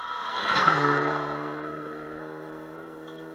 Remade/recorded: remade